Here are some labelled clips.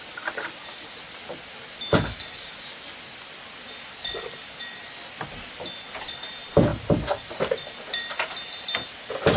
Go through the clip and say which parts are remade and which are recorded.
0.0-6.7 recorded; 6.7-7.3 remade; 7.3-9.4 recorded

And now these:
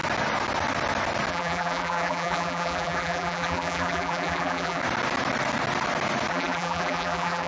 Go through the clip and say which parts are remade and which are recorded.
0.0-1.3 recorded; 1.3-4.8 remade; 4.8-6.3 recorded; 6.3-7.5 remade

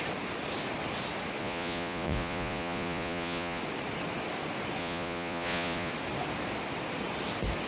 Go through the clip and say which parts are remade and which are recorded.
0.0-1.4 recorded; 1.4-3.6 remade; 3.6-4.8 recorded; 4.8-5.9 remade; 5.9-7.7 recorded

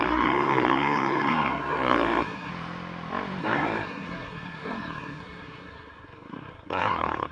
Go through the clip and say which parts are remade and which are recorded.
0.0-2.5 remade; 2.5-3.4 recorded; 3.4-7.3 remade